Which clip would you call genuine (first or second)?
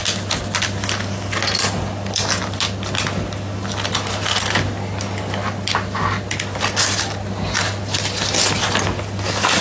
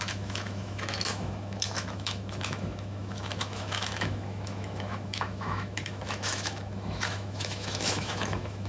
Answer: first